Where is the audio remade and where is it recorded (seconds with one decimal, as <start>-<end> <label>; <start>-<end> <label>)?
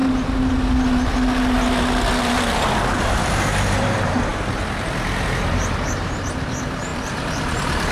0.0-3.0 recorded; 3.0-7.9 remade